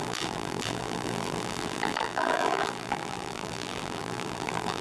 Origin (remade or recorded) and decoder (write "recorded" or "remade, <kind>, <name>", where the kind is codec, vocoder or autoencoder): remade, vocoder, BigVGAN v2